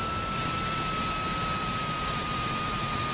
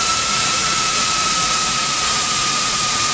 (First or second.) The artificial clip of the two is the second